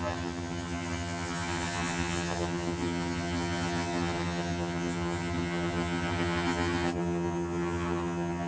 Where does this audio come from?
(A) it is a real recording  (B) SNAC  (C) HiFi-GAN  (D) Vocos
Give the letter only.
C